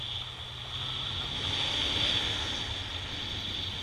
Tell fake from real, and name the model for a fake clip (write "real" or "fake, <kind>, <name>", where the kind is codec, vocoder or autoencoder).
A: real